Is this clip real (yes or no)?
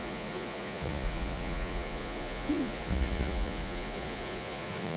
no